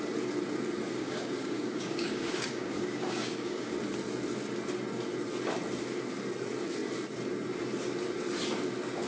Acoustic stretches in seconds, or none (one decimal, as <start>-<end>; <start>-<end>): 0.0-1.0; 3.7-9.1